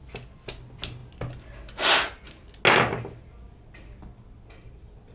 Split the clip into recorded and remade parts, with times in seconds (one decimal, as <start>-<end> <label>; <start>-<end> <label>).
0.0-5.1 recorded